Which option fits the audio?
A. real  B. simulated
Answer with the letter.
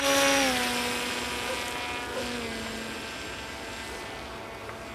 A